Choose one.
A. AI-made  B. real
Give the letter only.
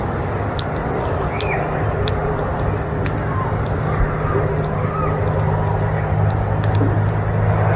B